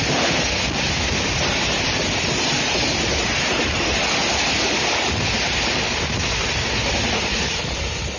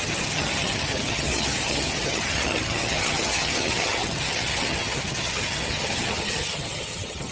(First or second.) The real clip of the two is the first